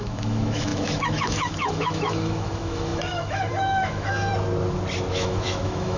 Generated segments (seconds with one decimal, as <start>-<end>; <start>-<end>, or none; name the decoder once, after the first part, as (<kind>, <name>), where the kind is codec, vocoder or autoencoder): 0.0-4.3 (autoencoder, DAC-VAE); 5.1-6.0